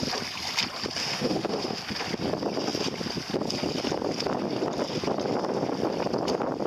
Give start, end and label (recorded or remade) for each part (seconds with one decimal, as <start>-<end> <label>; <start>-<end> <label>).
0.0-1.0 recorded; 1.0-1.8 remade; 1.8-6.7 recorded